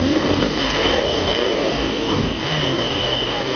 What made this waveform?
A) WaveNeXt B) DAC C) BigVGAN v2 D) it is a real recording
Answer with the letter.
B